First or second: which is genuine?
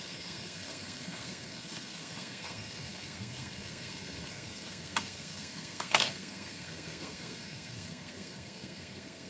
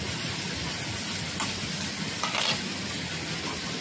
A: second